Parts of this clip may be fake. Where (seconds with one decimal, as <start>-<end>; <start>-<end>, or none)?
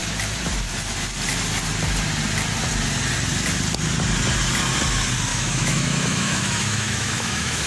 5.3-7.7